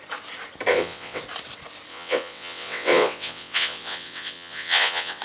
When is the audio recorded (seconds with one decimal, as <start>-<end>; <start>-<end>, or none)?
0.0-0.7; 1.2-1.9